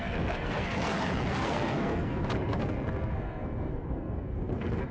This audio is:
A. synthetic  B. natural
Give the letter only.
A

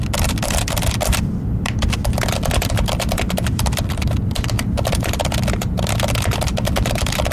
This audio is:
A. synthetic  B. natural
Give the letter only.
B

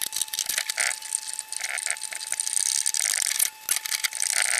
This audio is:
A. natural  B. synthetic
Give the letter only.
A